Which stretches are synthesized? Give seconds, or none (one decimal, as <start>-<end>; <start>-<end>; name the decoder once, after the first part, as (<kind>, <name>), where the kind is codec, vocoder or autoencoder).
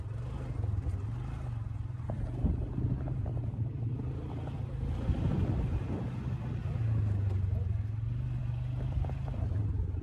none